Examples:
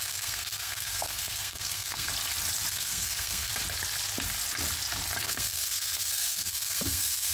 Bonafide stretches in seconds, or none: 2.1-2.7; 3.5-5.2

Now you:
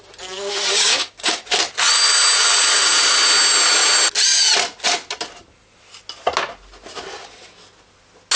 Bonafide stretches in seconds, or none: 0.0-0.7; 1.4-8.4

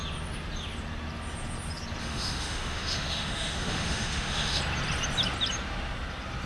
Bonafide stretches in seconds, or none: 0.0-2.0; 4.6-6.5

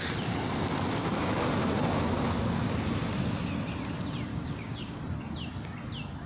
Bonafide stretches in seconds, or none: 0.0-4.3; 5.0-6.3